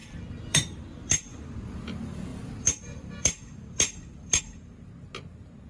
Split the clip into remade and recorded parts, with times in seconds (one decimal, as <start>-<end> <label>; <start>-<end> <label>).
0.0-1.4 remade; 1.4-2.3 recorded; 2.3-4.4 remade; 4.4-5.7 recorded